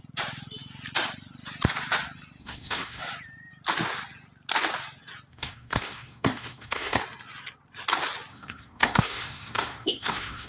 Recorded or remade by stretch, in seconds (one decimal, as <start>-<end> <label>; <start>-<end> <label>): 0.0-2.4 recorded; 2.4-3.0 remade; 3.0-5.3 recorded; 5.3-7.0 remade; 7.0-8.3 recorded; 8.3-10.5 remade

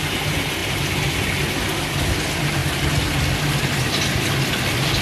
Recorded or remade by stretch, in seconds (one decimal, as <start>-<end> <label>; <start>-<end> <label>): 0.0-5.0 recorded